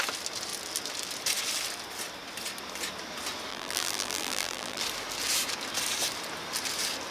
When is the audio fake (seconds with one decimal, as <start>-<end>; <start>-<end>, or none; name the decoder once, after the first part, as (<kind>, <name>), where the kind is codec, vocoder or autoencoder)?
3.5-4.8 (vocoder, BigVGAN v2)